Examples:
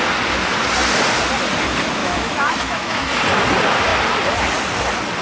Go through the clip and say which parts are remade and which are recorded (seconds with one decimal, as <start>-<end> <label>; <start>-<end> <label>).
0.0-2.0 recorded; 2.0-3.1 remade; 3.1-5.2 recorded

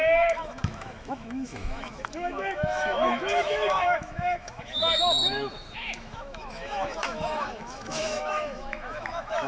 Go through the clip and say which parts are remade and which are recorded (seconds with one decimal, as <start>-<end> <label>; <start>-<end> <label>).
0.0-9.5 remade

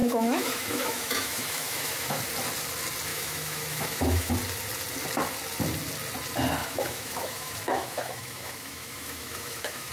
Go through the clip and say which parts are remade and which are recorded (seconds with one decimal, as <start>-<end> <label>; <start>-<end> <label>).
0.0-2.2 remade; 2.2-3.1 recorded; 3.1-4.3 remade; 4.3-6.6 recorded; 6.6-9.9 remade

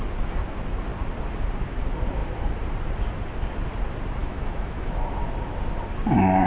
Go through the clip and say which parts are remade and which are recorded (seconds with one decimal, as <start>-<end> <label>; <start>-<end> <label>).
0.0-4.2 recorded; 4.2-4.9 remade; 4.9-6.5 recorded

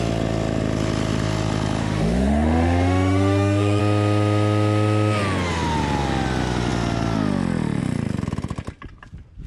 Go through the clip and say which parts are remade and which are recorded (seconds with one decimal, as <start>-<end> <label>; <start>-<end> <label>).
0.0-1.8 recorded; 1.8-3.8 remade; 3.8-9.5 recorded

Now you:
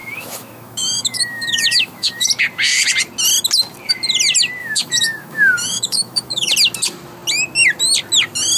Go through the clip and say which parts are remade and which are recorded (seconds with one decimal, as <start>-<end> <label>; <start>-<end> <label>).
0.0-2.3 remade; 2.3-4.6 recorded; 4.6-6.5 remade; 6.5-8.6 recorded